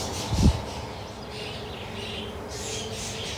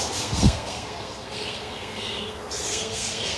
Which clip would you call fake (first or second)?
second